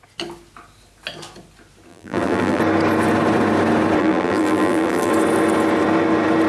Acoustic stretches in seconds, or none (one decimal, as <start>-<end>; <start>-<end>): 0.0-1.9; 2.6-4.0; 5.1-6.5